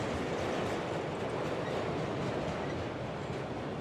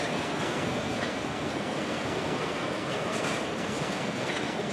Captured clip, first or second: first